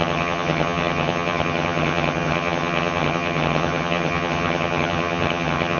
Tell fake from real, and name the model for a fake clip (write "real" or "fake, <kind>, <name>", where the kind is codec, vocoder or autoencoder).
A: fake, vocoder, HiFi-GAN